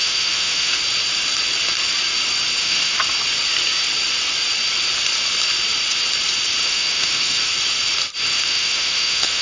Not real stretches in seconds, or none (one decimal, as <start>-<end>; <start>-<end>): 0.0-0.8; 2.6-3.0; 6.6-7.5; 8.4-9.4